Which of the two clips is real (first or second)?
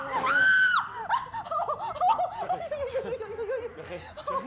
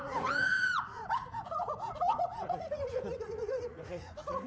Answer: first